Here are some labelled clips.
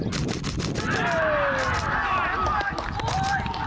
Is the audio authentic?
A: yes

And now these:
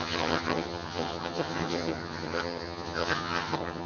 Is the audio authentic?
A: no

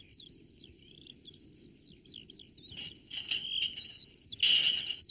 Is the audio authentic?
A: yes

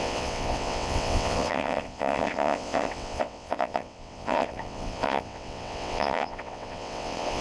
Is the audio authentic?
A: no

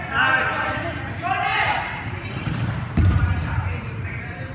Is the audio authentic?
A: no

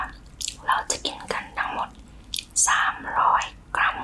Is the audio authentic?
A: yes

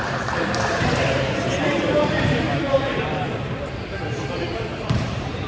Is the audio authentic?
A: no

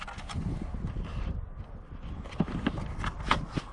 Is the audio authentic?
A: yes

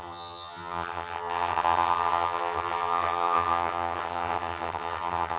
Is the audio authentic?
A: no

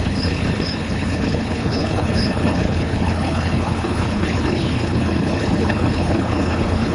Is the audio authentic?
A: no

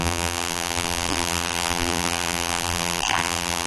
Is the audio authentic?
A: no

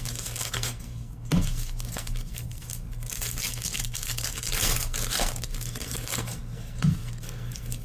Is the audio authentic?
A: no